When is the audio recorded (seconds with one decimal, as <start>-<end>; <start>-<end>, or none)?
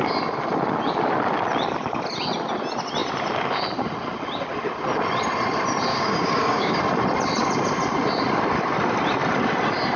0.0-5.9; 6.8-10.0